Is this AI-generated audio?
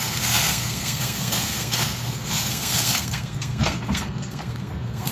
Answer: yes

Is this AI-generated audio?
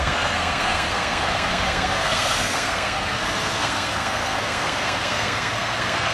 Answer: yes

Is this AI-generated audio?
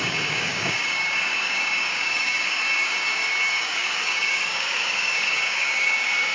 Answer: yes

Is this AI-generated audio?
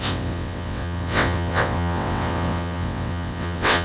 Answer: yes